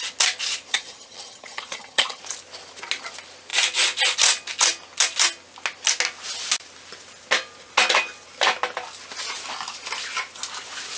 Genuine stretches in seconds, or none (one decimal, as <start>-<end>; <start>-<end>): 0.0-0.7; 2.2-11.0